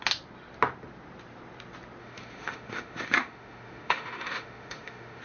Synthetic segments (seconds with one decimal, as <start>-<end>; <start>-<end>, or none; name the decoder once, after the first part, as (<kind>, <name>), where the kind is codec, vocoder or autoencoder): 2.0-5.2 (autoencoder, DAC-VAE)